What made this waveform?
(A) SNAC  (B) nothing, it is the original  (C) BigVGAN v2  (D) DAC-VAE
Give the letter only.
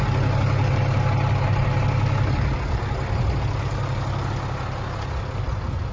B